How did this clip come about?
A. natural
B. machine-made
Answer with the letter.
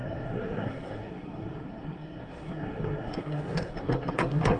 B